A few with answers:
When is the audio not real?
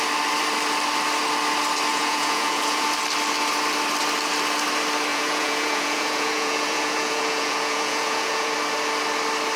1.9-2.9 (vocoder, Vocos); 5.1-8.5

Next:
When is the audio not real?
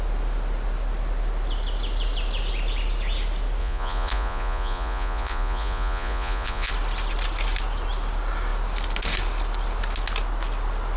3.6-6.7 (vocoder, Vocos)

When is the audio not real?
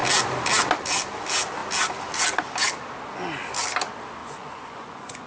4.2-5.3 (vocoder, Vocos)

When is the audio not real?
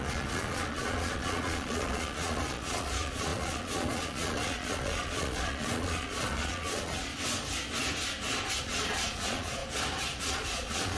0.0-7.1 (vocoder, Vocos); 8.6-9.6; 10.2-11.0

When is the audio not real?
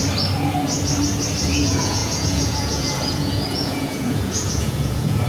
1.6-5.3 (vocoder, Vocos)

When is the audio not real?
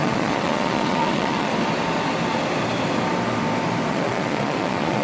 0.0-1.5 (vocoder, Vocos); 3.9-5.0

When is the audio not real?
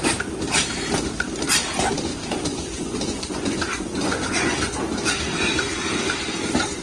2.1-4.8 (vocoder, Vocos)